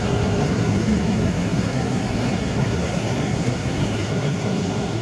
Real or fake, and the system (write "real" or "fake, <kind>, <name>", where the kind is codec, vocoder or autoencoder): fake, codec, SNAC